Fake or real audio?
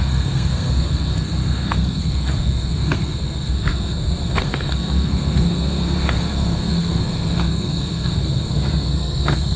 fake